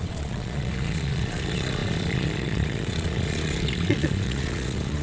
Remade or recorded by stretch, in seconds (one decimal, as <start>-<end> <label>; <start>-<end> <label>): 0.0-5.0 remade